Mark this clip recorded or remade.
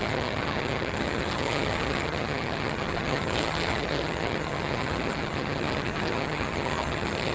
remade